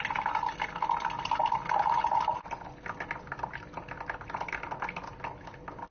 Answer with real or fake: real